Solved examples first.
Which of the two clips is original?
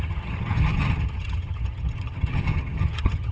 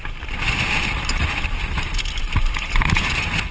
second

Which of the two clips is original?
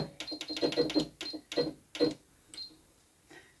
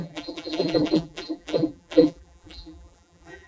first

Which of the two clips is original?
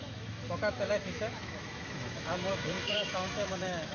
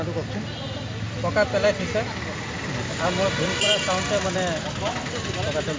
second